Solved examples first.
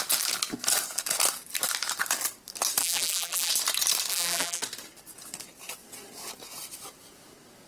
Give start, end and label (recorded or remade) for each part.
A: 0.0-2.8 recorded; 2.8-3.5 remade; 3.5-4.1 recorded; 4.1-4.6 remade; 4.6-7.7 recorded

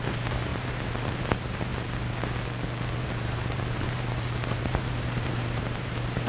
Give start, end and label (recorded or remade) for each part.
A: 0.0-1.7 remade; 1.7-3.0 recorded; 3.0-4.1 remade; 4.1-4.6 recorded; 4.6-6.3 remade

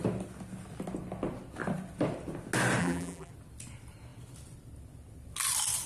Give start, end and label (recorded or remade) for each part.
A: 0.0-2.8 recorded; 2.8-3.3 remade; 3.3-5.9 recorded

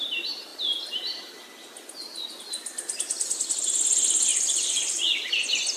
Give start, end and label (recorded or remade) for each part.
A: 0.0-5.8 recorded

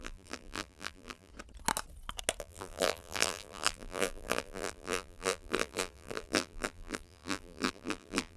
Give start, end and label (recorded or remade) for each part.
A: 0.0-1.3 remade; 1.3-2.4 recorded; 2.4-8.4 remade

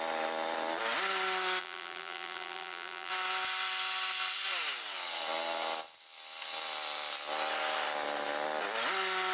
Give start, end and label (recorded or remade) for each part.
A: 0.0-1.6 recorded; 1.6-3.1 remade; 3.1-9.3 recorded

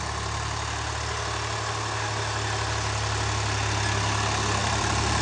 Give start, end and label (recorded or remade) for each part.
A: 0.0-4.6 recorded; 4.6-5.2 remade